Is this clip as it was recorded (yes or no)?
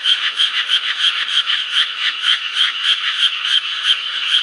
no